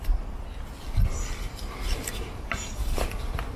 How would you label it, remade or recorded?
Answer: recorded